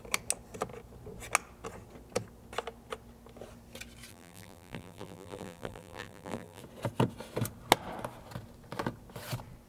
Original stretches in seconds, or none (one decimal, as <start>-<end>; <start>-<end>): 0.0-4.1; 6.6-9.7